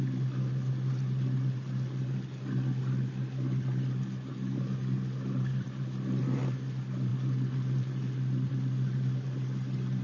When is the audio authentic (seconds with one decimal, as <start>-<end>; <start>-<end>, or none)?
0.0-10.0